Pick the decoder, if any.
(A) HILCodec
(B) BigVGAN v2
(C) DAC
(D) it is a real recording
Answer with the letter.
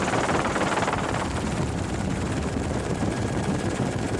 B